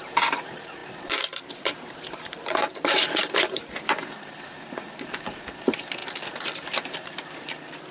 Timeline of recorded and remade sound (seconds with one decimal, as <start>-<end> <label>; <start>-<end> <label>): 0.0-7.9 remade